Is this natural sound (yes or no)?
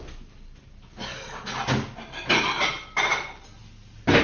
yes